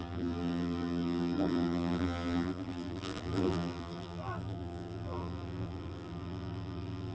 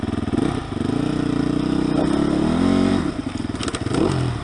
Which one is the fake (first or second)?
first